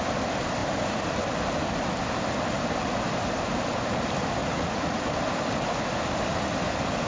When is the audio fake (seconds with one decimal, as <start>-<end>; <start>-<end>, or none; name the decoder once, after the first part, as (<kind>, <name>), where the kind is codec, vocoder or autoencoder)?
4.4-5.0 (vocoder, Vocos)